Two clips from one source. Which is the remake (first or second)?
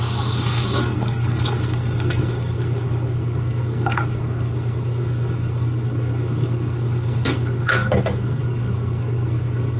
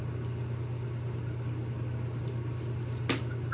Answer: first